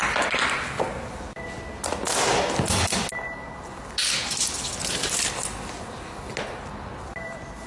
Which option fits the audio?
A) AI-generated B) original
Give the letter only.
B